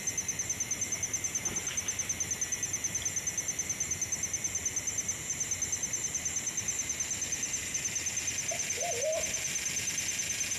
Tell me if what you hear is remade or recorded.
recorded